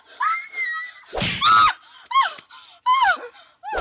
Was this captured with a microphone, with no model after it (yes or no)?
yes